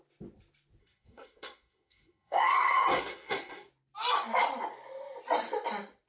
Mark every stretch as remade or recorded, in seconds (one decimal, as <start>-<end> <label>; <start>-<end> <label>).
0.0-0.8 recorded; 0.8-3.7 remade; 3.7-6.1 recorded